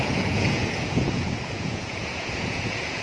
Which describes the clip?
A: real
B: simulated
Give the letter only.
B